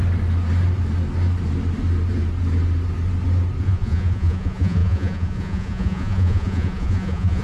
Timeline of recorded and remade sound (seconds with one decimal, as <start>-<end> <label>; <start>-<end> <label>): 0.0-3.6 recorded; 3.6-7.4 remade